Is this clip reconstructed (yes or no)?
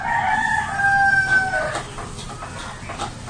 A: no